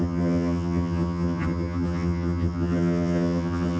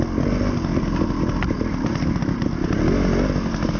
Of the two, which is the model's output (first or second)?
first